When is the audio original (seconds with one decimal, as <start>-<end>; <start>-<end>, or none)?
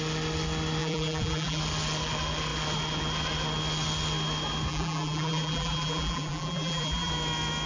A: 0.0-0.8; 1.6-4.7; 7.1-7.7